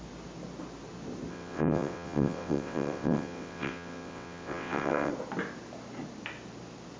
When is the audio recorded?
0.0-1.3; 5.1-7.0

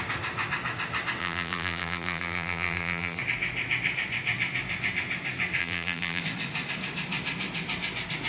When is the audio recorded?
0.0-1.2; 3.2-5.6; 6.2-8.3